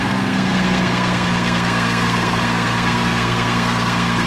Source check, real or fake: fake